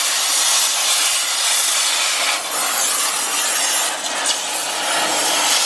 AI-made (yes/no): no